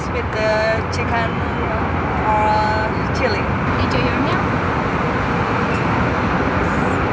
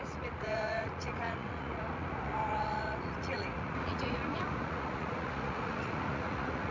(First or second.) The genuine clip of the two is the first